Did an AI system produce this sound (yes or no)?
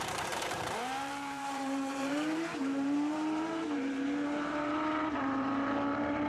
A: yes